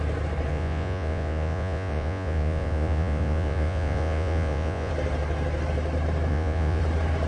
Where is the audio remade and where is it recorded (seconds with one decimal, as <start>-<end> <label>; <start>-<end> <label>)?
0.0-0.5 recorded; 0.5-4.9 remade; 4.9-6.3 recorded; 6.3-6.8 remade; 6.8-7.3 recorded